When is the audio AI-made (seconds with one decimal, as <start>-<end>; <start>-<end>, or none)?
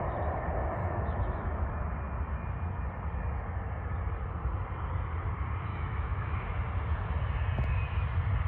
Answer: 0.8-1.7; 5.7-6.4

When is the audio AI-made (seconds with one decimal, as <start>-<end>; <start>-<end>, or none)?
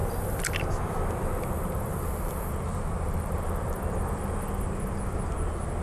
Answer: 1.9-3.4